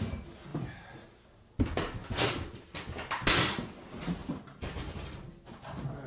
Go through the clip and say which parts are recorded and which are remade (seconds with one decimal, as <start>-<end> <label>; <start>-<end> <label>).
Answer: 0.0-0.5 recorded; 0.5-1.5 remade; 1.5-2.0 recorded; 2.0-2.6 remade; 2.6-6.1 recorded